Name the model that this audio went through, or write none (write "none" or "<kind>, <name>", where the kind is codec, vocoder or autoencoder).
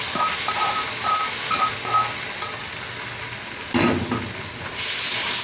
none